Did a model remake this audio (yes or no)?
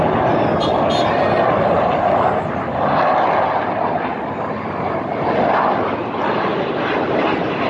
no